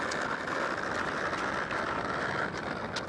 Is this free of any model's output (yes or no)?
yes